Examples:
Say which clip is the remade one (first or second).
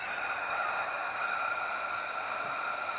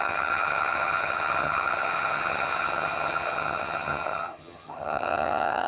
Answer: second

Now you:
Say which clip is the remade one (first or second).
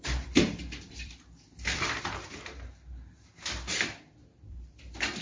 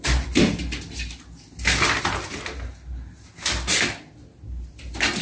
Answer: first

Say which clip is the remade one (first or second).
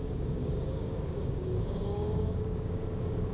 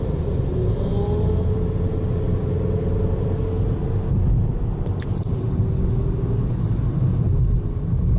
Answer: first